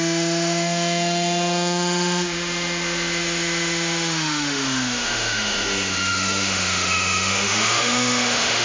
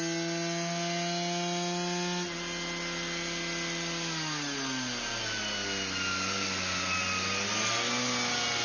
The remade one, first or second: first